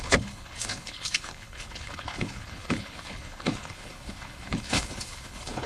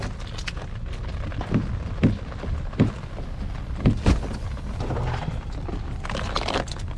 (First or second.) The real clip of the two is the second